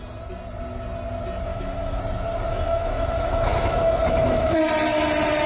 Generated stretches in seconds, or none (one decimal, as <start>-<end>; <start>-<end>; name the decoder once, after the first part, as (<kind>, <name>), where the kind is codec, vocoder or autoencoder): 1.5-2.0 (autoencoder, DAC-VAE); 2.5-4.6